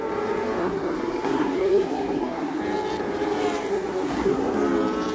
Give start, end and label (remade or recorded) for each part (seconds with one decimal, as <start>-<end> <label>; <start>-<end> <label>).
0.0-0.6 recorded; 0.6-2.6 remade; 2.6-3.7 recorded; 3.7-4.5 remade; 4.5-5.1 recorded